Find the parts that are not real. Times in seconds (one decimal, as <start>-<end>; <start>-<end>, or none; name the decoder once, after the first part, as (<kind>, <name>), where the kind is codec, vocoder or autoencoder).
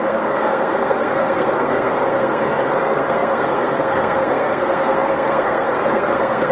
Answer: 0.0-6.5 (codec, SNAC)